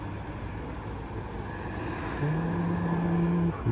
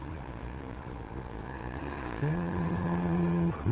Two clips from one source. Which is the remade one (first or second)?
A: second